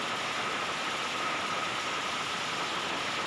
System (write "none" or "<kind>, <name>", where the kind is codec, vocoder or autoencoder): none